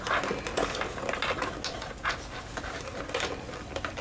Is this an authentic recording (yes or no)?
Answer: yes